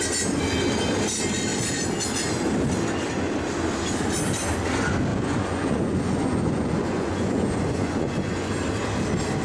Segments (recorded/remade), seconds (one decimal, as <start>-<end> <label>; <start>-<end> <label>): 0.0-5.1 recorded; 5.1-8.5 remade; 8.5-9.4 recorded